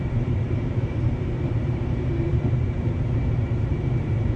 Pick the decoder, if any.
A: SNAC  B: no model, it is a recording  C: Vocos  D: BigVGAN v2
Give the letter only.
D